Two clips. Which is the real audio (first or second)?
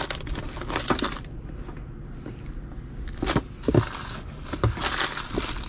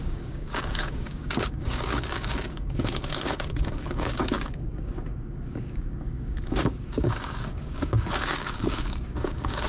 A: first